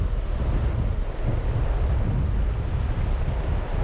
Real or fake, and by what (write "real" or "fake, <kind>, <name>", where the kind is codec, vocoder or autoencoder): real